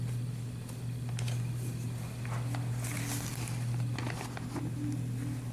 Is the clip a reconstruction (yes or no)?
no